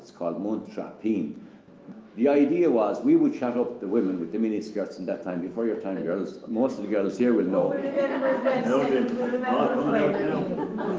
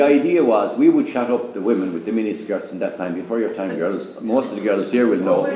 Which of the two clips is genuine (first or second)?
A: second